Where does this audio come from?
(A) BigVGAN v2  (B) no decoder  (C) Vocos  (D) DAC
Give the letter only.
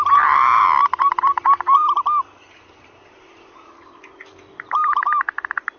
B